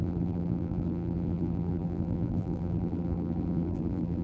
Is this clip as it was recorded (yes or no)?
no